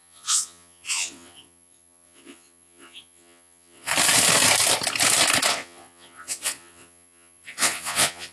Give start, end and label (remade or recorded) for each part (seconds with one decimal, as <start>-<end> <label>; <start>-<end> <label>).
0.0-3.9 remade; 3.9-5.5 recorded; 5.5-8.3 remade